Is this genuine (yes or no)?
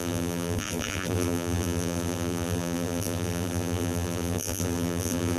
no